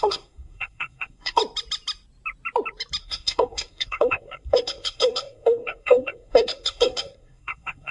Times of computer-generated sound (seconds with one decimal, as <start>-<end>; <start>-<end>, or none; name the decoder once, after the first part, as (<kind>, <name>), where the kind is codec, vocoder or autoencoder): 0.0-1.4 (codec, SNAC); 3.0-7.9